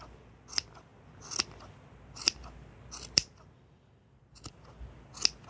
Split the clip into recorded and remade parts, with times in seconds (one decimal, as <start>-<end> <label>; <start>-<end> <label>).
0.0-5.5 recorded